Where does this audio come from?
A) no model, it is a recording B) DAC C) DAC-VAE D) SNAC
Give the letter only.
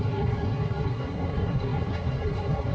D